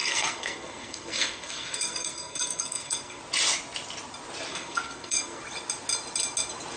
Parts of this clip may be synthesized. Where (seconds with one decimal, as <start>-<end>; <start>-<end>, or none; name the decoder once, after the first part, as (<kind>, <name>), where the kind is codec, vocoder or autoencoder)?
0.0-3.2 (codec, SNAC); 4.5-5.4